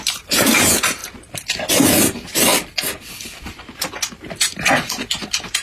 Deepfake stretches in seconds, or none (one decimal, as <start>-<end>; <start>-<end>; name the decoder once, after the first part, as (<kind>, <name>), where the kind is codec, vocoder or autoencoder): 0.0-1.0 (vocoder, BigVGAN v2); 2.0-2.5; 4.1-5.6